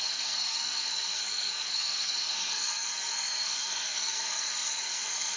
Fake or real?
fake